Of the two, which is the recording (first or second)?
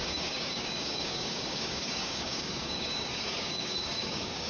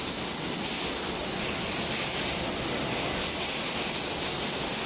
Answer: second